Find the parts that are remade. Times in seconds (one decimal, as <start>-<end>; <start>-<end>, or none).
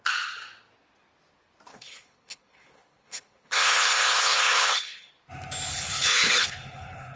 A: 1.7-5.1; 5.7-7.2